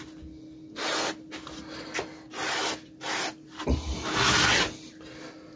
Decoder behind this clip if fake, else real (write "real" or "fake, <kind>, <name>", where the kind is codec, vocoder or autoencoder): real